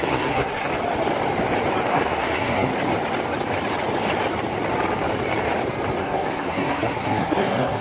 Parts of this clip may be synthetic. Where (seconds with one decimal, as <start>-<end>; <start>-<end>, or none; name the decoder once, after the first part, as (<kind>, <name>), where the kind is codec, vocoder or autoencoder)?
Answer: 0.0-0.7 (codec, SNAC); 1.9-2.7; 6.0-7.8